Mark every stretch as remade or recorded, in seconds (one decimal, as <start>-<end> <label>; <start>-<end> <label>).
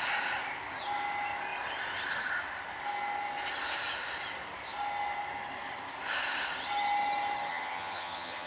0.0-7.5 recorded; 7.5-8.5 remade